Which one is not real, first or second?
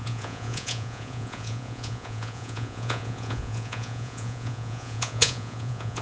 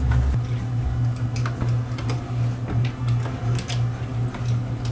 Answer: first